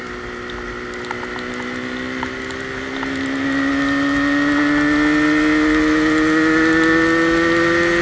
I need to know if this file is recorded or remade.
recorded